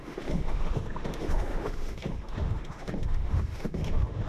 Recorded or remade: remade